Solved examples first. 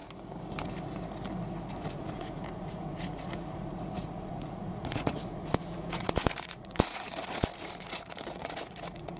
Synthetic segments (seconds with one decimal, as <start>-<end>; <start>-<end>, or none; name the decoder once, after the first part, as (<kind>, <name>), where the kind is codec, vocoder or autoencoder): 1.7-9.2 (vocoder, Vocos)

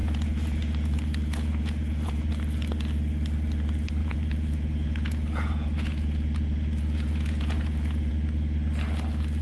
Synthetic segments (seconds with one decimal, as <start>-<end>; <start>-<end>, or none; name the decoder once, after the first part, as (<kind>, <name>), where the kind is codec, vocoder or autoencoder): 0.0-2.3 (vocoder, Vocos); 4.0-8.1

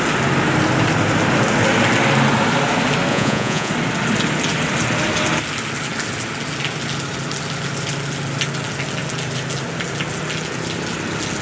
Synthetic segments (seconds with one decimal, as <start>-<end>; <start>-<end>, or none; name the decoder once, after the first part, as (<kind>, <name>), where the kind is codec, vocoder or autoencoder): 3.1-3.7 (vocoder, Vocos)

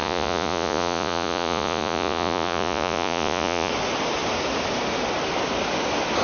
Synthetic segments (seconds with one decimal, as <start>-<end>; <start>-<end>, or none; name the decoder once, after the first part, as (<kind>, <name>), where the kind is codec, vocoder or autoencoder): 0.0-3.7 (vocoder, Vocos)

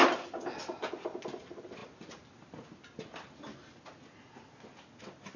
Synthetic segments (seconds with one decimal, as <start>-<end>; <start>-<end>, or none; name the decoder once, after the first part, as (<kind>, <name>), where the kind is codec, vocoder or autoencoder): none

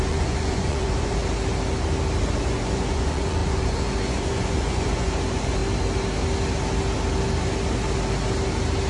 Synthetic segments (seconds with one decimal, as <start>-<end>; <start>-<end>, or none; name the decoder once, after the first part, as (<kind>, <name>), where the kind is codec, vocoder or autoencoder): 0.0-1.2 (vocoder, Vocos); 2.2-5.6